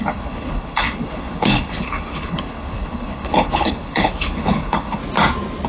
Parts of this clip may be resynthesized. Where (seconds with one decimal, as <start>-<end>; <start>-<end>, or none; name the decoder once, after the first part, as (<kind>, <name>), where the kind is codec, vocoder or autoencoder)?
0.0-5.0 (codec, HILCodec)